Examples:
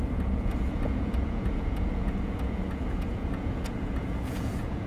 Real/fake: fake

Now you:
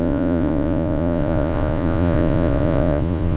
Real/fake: fake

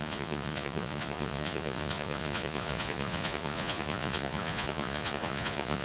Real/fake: fake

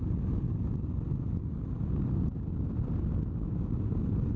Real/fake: real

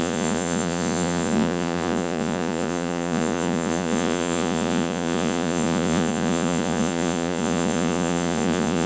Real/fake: fake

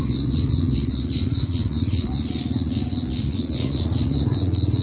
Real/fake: fake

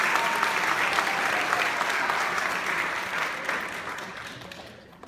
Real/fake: real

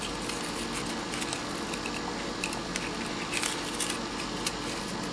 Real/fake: real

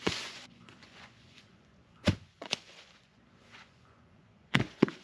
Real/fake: fake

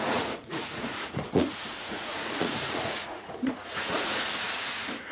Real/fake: fake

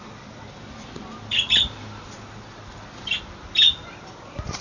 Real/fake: real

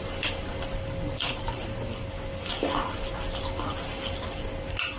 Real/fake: real